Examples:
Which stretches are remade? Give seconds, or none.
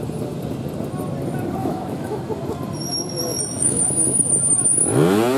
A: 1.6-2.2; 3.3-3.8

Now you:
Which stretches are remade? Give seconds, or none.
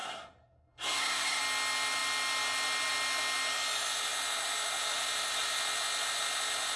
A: 0.0-1.4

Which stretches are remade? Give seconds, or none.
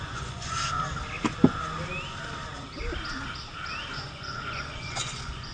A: 0.0-0.6; 3.9-5.5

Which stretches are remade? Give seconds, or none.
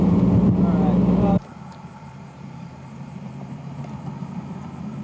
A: 1.5-4.1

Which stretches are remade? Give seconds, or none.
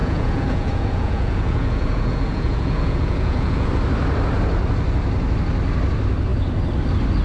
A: 0.0-3.7